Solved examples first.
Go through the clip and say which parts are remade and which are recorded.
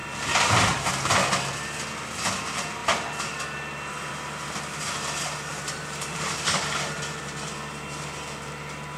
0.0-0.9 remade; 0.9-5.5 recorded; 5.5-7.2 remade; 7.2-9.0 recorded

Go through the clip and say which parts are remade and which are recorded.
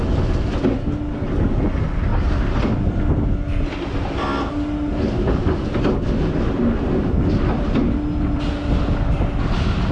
0.0-2.1 recorded; 2.1-2.8 remade; 2.8-9.9 recorded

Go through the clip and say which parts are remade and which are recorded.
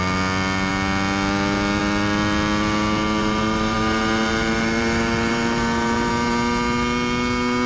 0.0-3.2 recorded; 3.2-6.1 remade; 6.1-7.7 recorded